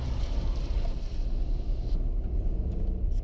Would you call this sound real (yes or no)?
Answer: no